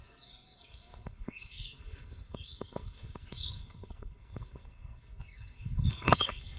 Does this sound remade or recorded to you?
remade